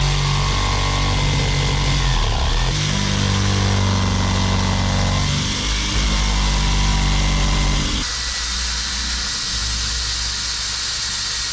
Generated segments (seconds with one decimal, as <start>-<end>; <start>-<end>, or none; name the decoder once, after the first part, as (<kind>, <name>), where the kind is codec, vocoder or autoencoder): none